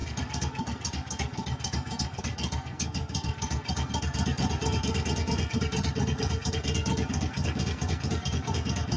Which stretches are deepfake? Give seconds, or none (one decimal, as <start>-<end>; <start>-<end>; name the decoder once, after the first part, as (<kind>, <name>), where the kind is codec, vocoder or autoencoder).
0.0-9.0 (codec, SNAC)